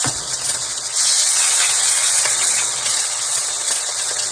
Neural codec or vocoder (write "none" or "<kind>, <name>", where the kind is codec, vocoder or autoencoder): vocoder, WaveNeXt